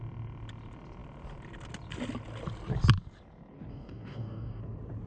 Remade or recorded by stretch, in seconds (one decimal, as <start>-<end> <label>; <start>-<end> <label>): 0.0-3.7 recorded; 3.7-4.6 remade; 4.6-5.1 recorded